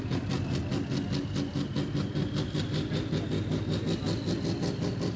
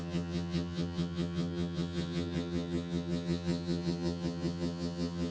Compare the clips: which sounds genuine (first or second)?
first